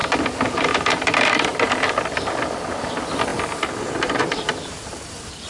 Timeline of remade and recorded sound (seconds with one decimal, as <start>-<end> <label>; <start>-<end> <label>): 0.0-1.5 remade; 1.5-2.8 recorded; 2.8-3.3 remade; 3.3-3.9 recorded; 3.9-5.5 remade